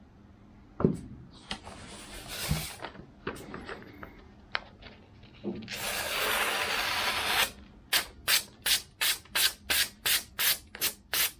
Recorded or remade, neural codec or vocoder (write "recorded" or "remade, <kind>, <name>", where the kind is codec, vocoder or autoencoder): recorded